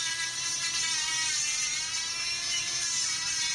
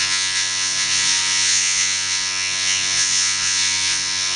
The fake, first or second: second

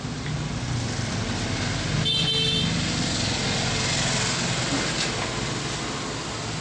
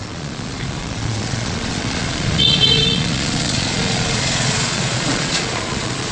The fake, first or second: second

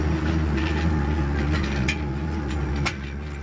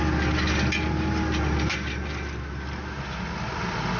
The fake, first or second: first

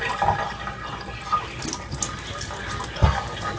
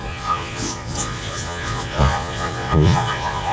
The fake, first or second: second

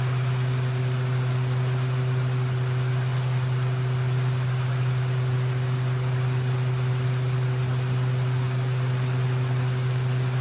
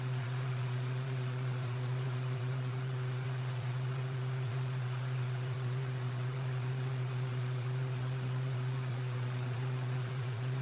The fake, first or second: second